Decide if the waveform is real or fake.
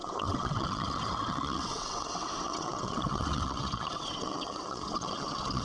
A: fake